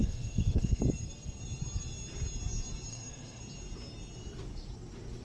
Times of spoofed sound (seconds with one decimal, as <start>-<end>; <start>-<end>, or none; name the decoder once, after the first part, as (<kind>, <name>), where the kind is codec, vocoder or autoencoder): 0.0-0.8 (autoencoder, DAC-VAE); 2.9-3.4